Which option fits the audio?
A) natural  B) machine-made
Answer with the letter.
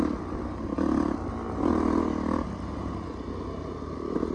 A